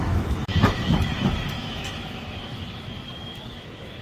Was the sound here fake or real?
fake